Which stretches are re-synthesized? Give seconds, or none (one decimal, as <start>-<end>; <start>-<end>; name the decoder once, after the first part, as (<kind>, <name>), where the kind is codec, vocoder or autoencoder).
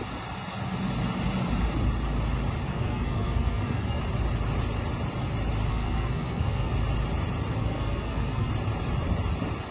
2.7-4.0 (codec, SNAC); 5.7-6.7; 7.6-8.5